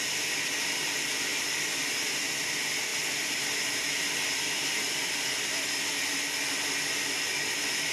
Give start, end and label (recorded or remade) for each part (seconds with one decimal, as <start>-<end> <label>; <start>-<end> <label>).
0.0-7.9 recorded